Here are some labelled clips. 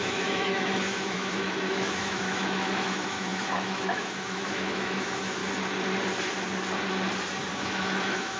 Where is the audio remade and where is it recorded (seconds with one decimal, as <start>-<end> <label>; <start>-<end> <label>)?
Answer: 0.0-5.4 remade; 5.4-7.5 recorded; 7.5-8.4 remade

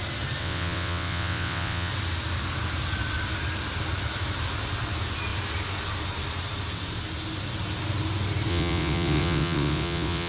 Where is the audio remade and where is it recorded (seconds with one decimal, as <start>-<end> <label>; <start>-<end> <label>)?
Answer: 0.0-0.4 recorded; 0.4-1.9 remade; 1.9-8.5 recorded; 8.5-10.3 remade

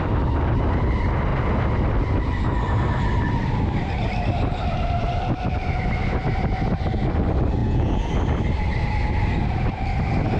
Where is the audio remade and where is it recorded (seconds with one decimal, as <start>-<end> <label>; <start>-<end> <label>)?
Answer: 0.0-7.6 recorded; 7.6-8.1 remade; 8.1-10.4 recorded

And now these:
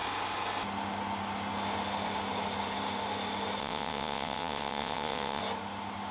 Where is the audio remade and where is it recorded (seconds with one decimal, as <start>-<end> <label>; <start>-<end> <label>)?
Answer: 0.0-3.6 recorded; 3.6-5.4 remade; 5.4-6.1 recorded

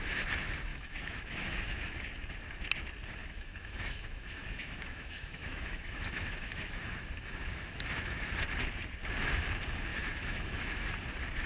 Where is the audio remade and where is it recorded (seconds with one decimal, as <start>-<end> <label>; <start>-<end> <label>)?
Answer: 0.0-0.7 recorded; 0.7-1.8 remade; 1.8-3.2 recorded; 3.2-8.3 remade; 8.3-9.9 recorded; 9.9-10.9 remade; 10.9-11.5 recorded

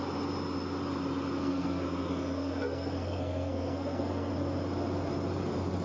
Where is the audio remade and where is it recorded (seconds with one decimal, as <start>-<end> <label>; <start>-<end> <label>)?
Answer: 0.0-1.4 recorded; 1.4-4.3 remade; 4.3-5.8 recorded

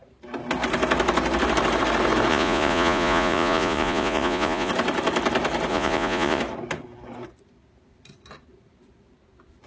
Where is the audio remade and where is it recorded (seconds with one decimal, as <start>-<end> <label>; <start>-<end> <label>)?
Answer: 0.0-2.3 recorded; 2.3-4.7 remade; 4.7-5.7 recorded; 5.7-6.4 remade; 6.4-9.7 recorded